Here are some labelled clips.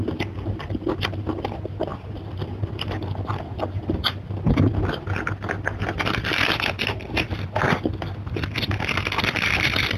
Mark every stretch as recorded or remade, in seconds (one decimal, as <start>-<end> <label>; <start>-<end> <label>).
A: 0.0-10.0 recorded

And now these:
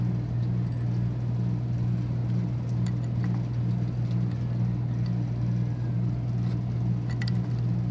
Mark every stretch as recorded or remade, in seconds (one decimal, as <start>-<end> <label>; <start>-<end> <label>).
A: 0.0-7.9 recorded

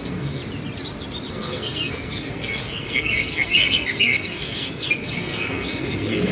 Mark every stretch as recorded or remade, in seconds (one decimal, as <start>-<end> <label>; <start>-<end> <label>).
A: 0.0-0.4 remade; 0.4-1.3 recorded; 1.3-6.3 remade

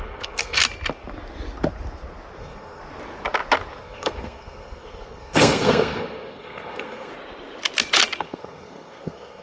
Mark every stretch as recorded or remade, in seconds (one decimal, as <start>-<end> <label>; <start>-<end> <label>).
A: 0.0-0.6 remade; 0.6-2.4 recorded; 2.4-2.8 remade; 2.8-3.8 recorded; 3.8-7.1 remade; 7.1-8.2 recorded; 8.2-9.4 remade